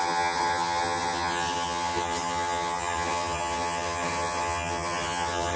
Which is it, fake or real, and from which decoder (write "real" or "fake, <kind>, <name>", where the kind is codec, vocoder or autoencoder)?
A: fake, vocoder, HiFi-GAN